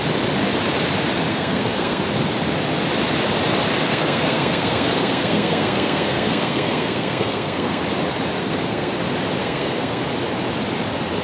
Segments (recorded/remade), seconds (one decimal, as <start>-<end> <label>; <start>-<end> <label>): 0.0-1.3 recorded; 1.3-2.0 remade; 2.0-3.9 recorded; 3.9-7.8 remade; 7.8-8.4 recorded; 8.4-8.9 remade; 8.9-9.4 recorded; 9.4-10.0 remade; 10.0-11.2 recorded